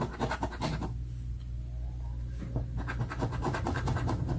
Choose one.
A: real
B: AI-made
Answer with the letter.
A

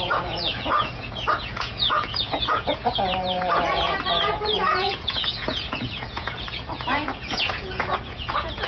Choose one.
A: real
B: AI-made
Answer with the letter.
B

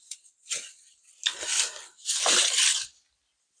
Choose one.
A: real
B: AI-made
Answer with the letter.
A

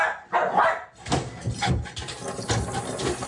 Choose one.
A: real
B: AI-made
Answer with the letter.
A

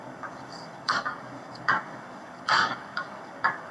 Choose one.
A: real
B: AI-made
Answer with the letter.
B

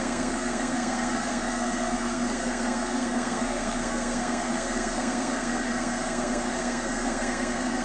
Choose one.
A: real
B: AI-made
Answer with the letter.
B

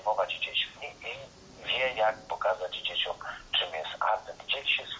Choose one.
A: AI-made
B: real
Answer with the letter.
B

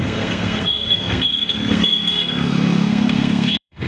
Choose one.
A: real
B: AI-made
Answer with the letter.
B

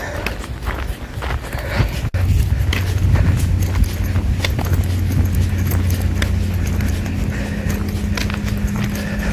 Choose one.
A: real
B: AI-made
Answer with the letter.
A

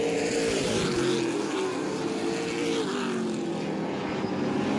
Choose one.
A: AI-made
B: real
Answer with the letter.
B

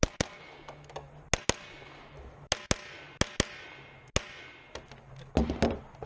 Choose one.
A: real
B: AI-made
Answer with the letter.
A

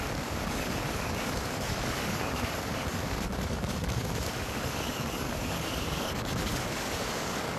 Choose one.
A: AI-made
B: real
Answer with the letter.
A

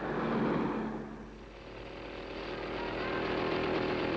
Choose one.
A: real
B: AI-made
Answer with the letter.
A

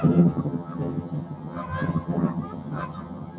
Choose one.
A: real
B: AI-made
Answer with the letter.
B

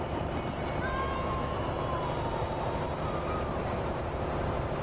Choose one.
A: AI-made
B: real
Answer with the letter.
A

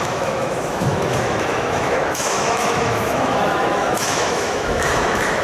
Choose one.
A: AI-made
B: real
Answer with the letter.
A